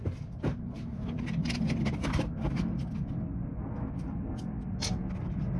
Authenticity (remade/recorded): recorded